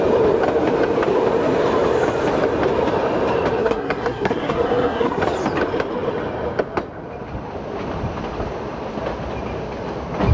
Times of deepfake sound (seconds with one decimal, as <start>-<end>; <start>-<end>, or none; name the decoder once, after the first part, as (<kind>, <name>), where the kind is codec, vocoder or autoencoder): 3.6-5.2 (codec, SNAC)